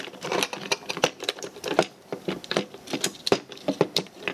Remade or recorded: remade